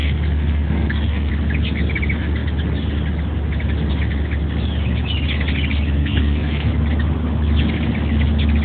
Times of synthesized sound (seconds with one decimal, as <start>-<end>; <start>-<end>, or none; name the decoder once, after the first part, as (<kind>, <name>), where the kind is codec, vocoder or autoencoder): 0.0-1.3 (codec, SNAC); 6.0-6.7